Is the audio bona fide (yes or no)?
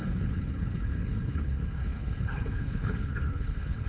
no